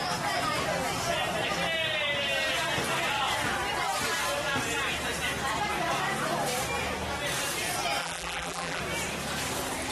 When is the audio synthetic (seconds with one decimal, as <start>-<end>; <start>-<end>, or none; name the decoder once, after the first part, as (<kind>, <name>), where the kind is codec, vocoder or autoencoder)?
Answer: 8.0-8.8 (vocoder, BigVGAN v2)